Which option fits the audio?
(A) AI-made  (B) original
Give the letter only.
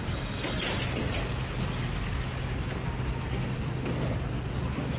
B